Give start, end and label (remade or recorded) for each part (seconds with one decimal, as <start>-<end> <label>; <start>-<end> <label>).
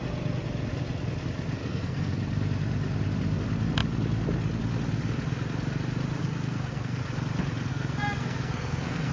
0.0-1.6 recorded; 1.6-2.1 remade; 2.1-6.2 recorded; 6.2-7.0 remade; 7.0-7.7 recorded; 7.7-9.1 remade